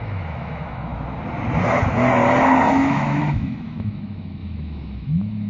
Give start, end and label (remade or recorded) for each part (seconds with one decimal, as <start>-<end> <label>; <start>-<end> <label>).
0.0-0.9 remade; 0.9-2.7 recorded; 2.7-5.5 remade

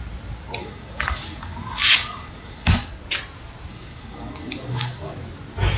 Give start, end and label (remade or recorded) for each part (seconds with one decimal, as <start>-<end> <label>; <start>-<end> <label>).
0.0-0.6 recorded; 0.6-2.9 remade; 2.9-3.7 recorded; 3.7-5.1 remade; 5.1-5.8 recorded

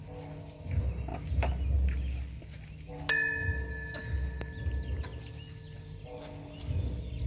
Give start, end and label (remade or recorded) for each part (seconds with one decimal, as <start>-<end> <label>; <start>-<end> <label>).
0.0-7.3 recorded

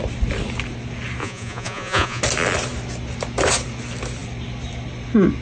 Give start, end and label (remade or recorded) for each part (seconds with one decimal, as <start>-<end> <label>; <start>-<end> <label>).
0.0-1.2 recorded; 1.2-2.2 remade; 2.2-5.4 recorded

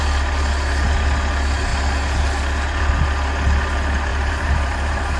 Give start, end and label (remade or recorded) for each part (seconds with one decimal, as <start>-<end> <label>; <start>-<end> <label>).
0.0-4.1 recorded; 4.1-5.2 remade

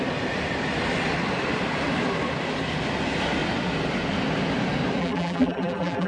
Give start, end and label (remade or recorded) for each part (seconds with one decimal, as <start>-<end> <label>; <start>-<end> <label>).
0.0-5.0 recorded; 5.0-6.1 remade

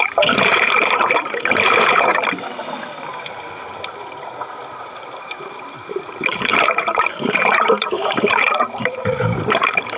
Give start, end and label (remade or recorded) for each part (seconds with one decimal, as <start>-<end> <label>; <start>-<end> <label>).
0.0-2.1 remade; 2.1-4.8 recorded; 4.8-10.0 remade

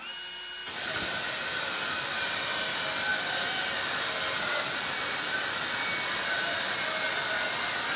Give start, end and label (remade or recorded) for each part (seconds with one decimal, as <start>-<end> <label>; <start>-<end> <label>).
0.0-8.0 recorded